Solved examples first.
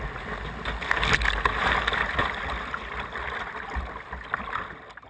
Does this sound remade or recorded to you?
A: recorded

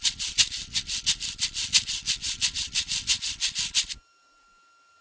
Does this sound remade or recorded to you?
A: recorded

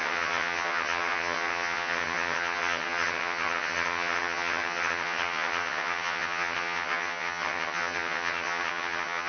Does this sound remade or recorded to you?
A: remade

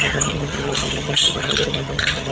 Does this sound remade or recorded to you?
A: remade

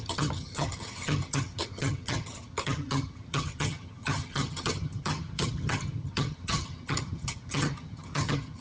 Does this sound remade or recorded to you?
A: remade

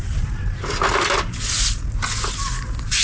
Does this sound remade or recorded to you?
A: recorded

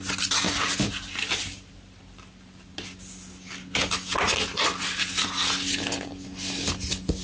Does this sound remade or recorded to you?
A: recorded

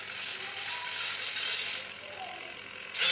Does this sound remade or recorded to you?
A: recorded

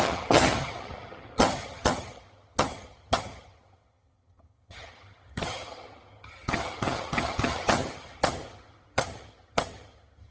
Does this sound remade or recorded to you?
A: remade